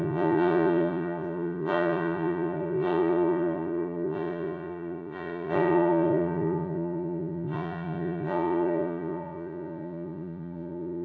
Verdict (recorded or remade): remade